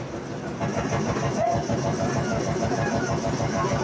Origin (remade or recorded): recorded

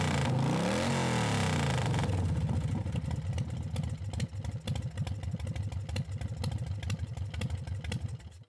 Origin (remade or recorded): recorded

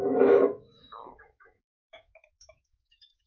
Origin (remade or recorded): remade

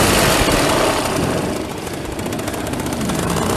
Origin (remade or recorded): recorded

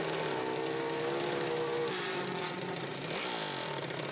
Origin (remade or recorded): recorded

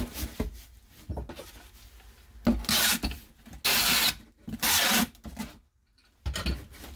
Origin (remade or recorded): recorded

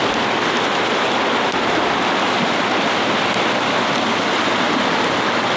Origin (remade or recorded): recorded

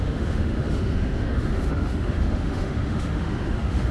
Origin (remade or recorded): remade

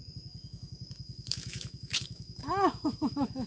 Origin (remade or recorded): remade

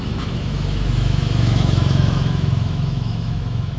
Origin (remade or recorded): remade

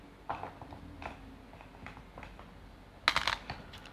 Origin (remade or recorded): recorded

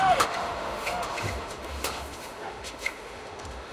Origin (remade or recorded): remade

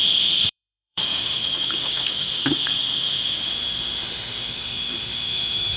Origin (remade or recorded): remade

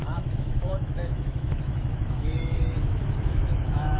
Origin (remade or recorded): remade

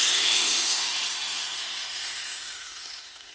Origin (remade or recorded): remade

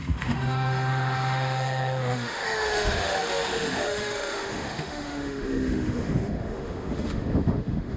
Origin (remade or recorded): remade